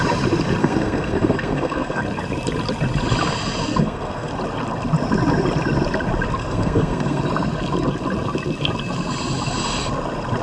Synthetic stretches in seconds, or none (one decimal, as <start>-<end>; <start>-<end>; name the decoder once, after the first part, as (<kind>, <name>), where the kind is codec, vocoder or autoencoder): 0.6-2.0 (codec, SNAC); 3.7-4.3; 6.4-7.2